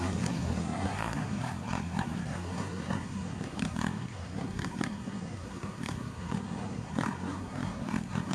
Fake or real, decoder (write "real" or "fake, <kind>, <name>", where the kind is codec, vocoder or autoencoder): fake, codec, SNAC